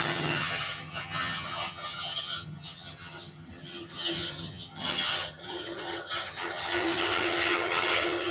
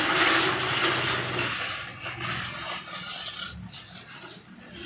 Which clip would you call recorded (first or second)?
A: second